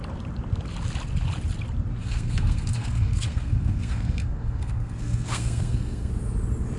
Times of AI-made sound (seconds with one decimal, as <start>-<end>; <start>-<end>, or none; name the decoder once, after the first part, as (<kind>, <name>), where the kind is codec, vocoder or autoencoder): 2.0-6.1 (codec, SNAC)